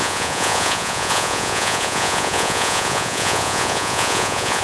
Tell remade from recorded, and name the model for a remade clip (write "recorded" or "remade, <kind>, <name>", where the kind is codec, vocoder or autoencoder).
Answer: remade, vocoder, Vocos